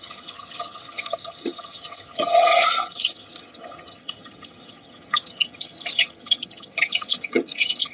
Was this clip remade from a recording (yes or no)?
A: yes